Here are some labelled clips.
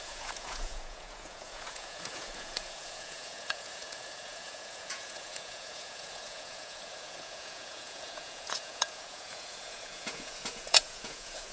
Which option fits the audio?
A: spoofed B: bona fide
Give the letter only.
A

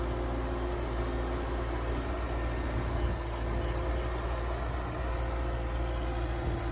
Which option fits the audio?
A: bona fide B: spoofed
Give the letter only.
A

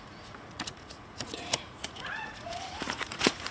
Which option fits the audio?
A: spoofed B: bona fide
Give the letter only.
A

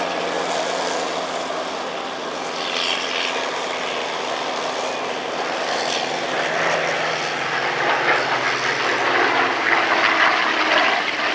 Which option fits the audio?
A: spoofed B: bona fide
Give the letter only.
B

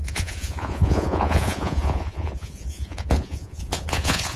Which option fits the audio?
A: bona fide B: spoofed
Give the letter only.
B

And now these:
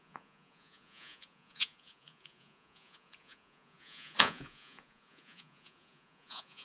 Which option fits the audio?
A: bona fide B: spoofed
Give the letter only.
B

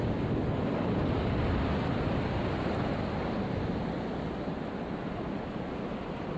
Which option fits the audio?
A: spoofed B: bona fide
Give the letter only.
B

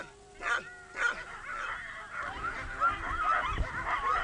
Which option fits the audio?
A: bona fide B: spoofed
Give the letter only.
A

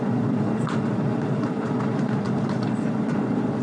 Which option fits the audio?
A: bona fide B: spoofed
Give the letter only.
B